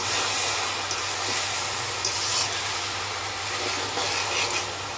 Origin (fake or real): real